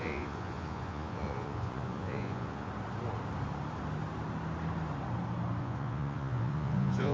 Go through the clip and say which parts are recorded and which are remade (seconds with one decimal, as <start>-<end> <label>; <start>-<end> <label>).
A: 0.0-2.7 remade; 2.7-5.6 recorded; 5.6-7.1 remade